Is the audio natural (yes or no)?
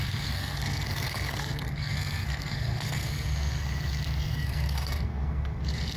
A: no